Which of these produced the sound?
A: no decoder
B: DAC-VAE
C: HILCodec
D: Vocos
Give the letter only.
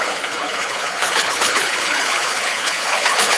C